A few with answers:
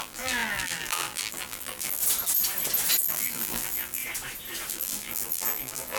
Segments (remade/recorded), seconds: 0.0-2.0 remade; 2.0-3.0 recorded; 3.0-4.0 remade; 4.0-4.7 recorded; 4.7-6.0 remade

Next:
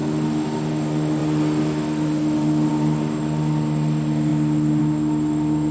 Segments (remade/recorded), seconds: 0.0-5.7 recorded

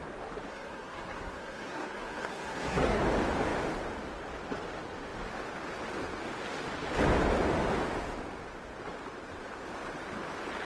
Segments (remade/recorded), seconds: 0.0-0.5 recorded; 0.5-3.0 remade; 3.0-10.6 recorded

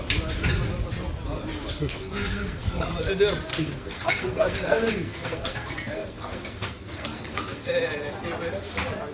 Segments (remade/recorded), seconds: 0.0-1.8 recorded; 1.8-2.9 remade; 2.9-3.5 recorded; 3.5-7.7 remade; 7.7-9.1 recorded

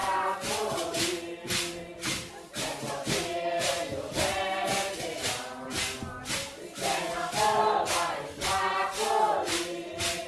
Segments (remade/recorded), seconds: 0.0-10.3 recorded